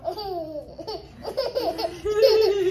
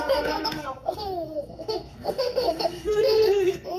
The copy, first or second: second